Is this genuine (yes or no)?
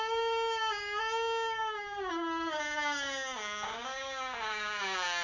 no